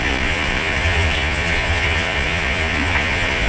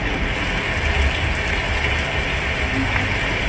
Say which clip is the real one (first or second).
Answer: second